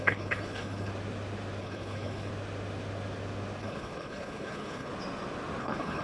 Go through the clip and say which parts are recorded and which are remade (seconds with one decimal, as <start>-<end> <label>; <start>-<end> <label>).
0.0-0.9 remade; 0.9-1.6 recorded; 1.6-2.3 remade; 2.3-3.6 recorded; 3.6-4.9 remade; 4.9-5.6 recorded; 5.6-6.0 remade